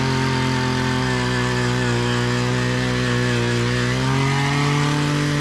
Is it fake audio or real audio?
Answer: real